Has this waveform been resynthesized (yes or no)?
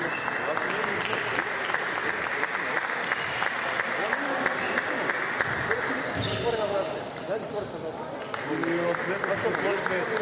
no